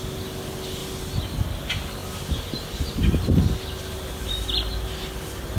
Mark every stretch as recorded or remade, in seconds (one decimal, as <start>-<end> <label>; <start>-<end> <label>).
0.0-5.6 recorded